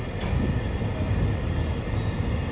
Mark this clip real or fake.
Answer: real